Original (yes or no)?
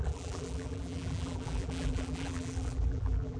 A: no